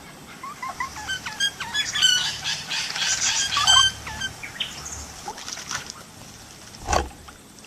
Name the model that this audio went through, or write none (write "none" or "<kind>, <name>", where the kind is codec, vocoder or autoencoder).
vocoder, BigVGAN v2